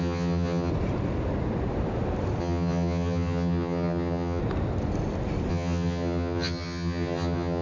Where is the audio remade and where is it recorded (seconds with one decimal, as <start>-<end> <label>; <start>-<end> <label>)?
0.0-0.7 remade; 0.7-2.4 recorded; 2.4-4.4 remade; 4.4-5.5 recorded; 5.5-7.6 remade